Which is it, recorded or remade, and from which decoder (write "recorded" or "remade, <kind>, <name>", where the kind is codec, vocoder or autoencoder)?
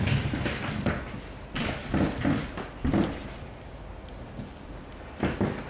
recorded